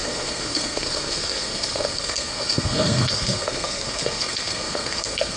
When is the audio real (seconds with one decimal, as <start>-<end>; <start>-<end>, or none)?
none